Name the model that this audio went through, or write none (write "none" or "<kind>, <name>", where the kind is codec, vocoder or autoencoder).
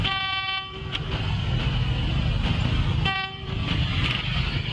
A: none